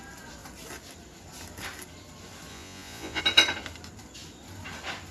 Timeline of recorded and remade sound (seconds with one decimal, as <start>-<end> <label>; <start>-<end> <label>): 0.0-2.5 recorded; 2.5-3.2 remade; 3.2-5.1 recorded